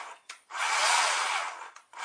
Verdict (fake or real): fake